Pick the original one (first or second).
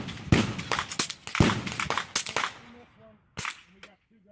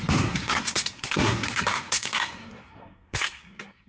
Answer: first